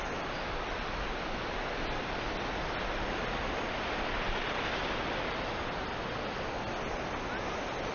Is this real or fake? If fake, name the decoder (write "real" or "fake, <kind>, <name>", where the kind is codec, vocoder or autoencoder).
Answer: real